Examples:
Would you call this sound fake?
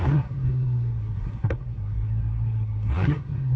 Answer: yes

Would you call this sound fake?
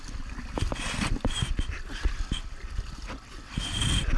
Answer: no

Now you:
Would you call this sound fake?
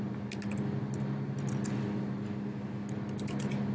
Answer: no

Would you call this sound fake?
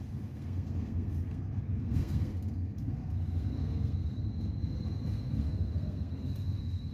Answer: yes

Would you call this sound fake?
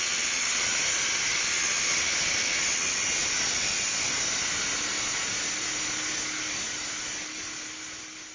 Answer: no